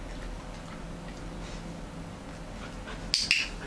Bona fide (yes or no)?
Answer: yes